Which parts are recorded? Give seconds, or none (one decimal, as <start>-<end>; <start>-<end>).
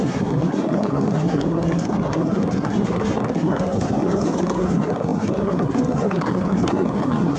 none